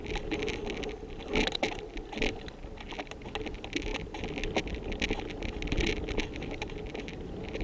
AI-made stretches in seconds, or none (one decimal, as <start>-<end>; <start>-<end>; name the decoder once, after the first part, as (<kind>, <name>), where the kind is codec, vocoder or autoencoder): none